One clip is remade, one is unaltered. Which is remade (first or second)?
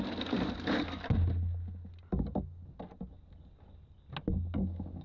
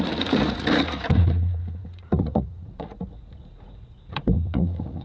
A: second